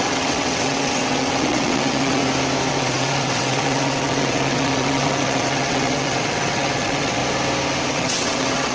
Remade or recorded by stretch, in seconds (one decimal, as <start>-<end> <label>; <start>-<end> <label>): 0.0-2.2 remade; 2.2-2.7 recorded; 2.7-7.2 remade; 7.2-7.9 recorded; 7.9-8.7 remade